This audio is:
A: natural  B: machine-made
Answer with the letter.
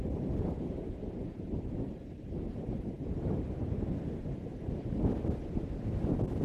A